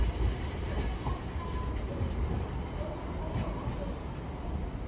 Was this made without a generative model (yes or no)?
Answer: yes